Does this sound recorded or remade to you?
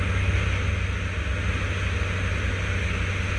recorded